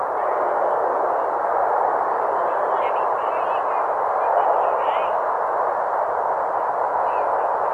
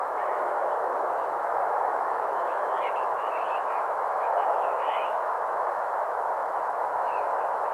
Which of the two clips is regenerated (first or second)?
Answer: second